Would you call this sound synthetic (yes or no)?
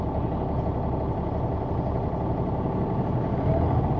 no